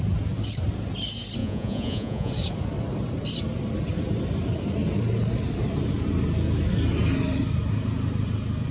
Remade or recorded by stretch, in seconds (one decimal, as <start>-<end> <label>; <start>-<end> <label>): 0.0-1.4 recorded; 1.4-2.3 remade; 2.3-8.7 recorded